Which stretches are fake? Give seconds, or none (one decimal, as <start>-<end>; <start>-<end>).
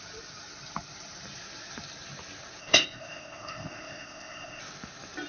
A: 2.6-4.6